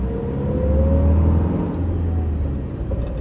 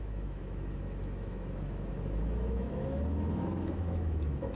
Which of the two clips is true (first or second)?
first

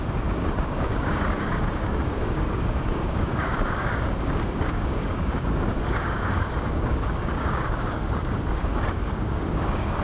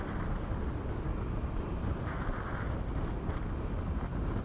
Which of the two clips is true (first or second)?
second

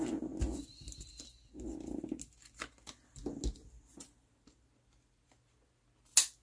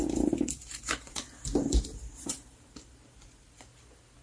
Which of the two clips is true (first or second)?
first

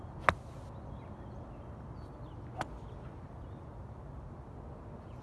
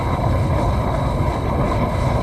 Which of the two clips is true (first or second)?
first